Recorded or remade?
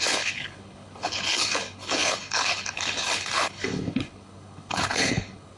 remade